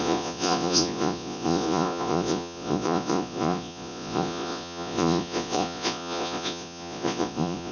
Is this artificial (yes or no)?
yes